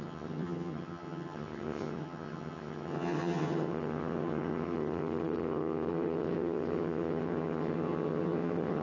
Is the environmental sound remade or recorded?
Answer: remade